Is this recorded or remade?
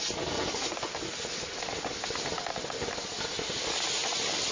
recorded